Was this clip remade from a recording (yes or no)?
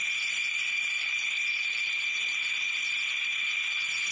no